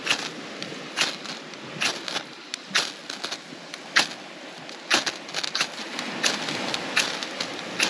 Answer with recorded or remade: recorded